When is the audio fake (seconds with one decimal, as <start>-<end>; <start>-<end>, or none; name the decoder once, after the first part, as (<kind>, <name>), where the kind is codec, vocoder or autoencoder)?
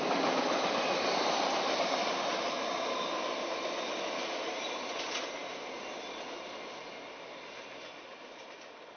none